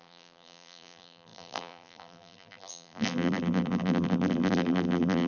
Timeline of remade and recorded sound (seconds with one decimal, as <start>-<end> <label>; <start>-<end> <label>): 0.0-5.3 remade